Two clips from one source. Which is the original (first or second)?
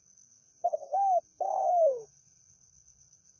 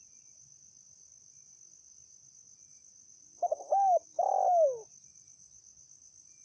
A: second